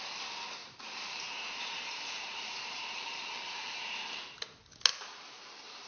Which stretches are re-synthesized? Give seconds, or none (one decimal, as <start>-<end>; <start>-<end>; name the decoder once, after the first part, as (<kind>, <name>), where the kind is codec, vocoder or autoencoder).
0.6-3.8 (vocoder, BigVGAN v2); 4.9-5.9